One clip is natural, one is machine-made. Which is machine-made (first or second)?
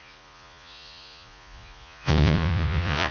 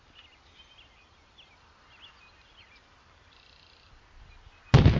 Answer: first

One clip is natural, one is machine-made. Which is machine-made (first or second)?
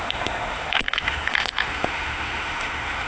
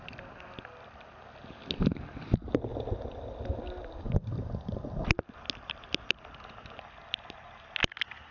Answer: first